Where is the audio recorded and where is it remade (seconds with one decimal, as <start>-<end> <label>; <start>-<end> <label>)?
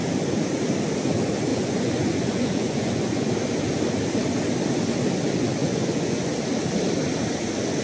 0.0-1.5 recorded; 1.5-3.3 remade; 3.3-5.6 recorded; 5.6-6.3 remade; 6.3-7.8 recorded